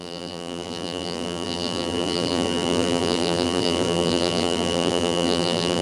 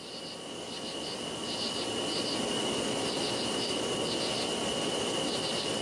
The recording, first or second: second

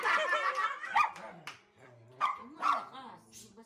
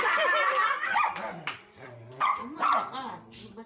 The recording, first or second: first